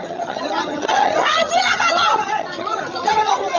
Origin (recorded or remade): remade